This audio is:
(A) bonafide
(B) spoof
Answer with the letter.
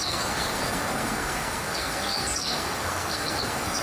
B